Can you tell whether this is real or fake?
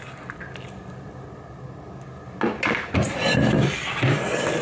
real